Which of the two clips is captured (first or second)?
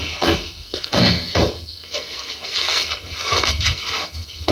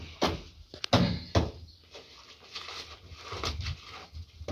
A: second